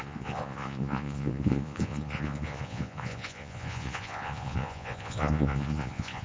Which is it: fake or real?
fake